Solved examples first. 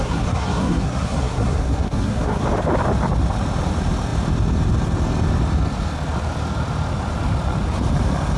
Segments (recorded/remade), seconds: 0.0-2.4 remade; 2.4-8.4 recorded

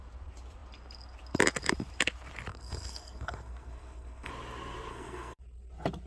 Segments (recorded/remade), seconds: 0.0-2.5 recorded; 2.5-4.3 remade; 4.3-4.9 recorded; 4.9-5.4 remade; 5.4-6.1 recorded

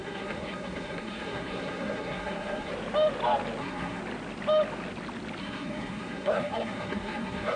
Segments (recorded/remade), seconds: 0.0-2.7 remade; 2.7-3.6 recorded; 3.6-4.0 remade; 4.0-5.4 recorded; 5.4-7.6 remade